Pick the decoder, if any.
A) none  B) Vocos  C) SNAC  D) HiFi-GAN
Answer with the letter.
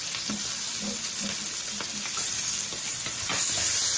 A